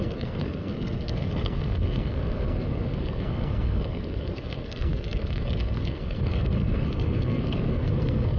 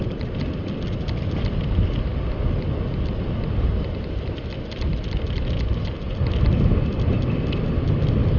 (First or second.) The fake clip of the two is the first